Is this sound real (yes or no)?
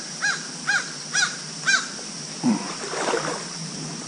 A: yes